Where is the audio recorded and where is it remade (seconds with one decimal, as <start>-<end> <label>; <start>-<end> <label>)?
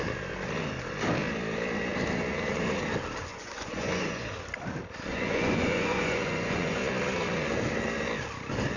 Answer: 0.0-3.3 recorded; 3.3-4.3 remade; 4.3-5.1 recorded; 5.1-6.8 remade; 6.8-8.8 recorded